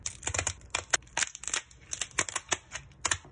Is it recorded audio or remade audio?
recorded